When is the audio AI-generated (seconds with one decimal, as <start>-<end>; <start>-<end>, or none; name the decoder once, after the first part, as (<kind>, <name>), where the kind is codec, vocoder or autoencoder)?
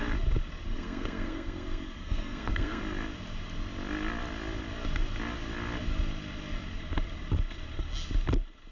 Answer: 0.7-2.8 (codec, SNAC)